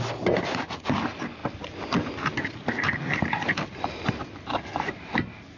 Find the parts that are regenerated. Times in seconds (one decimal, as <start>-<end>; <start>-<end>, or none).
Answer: none